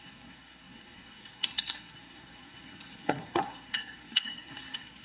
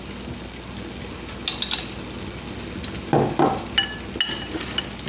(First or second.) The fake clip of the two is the first